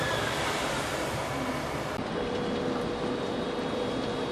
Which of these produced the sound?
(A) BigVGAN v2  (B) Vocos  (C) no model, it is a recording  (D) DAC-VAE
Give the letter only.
A